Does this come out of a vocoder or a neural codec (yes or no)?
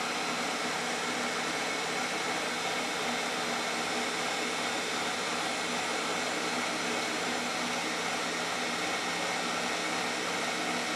no